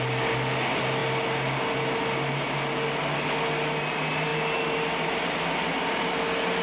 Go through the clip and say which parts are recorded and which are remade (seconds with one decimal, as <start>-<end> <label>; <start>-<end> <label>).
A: 0.0-6.6 recorded

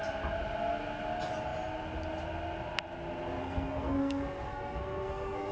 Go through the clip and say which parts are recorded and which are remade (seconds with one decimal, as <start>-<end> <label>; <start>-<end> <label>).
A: 0.0-3.4 recorded; 3.4-5.5 remade

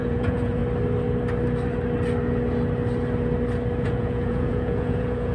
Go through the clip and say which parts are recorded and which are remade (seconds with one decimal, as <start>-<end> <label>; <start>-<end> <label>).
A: 0.0-0.6 remade; 0.6-3.8 recorded; 3.8-5.3 remade

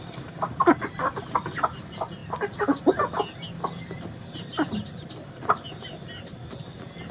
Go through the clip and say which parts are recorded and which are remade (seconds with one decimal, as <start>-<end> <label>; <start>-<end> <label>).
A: 0.0-7.1 recorded